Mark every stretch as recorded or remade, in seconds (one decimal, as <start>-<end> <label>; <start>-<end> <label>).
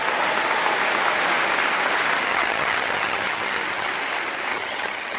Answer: 0.0-2.3 recorded; 2.3-3.9 remade; 3.9-4.5 recorded; 4.5-5.2 remade